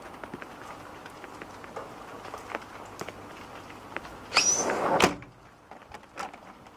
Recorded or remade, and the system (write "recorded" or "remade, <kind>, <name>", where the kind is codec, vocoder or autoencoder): recorded